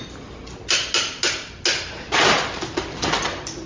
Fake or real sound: real